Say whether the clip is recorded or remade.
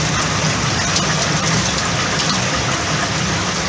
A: recorded